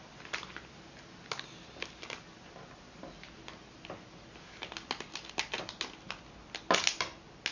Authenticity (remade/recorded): recorded